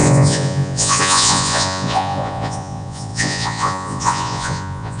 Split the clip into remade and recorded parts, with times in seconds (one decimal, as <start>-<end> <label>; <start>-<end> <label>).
0.0-5.0 remade